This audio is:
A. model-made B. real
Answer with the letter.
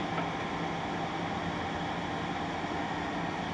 B